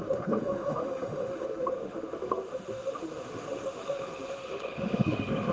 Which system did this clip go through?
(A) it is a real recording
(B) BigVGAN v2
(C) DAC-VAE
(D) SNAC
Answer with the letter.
C